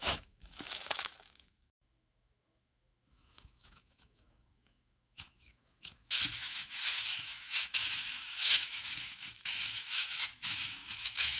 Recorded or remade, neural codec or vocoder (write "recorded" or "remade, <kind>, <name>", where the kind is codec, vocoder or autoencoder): remade, autoencoder, DAC-VAE